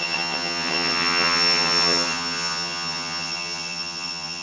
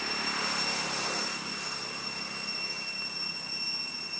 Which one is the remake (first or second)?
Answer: first